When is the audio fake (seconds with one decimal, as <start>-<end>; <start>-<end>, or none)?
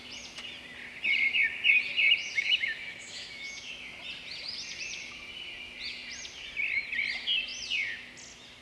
2.2-3.7